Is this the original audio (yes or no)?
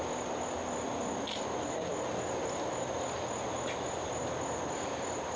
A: yes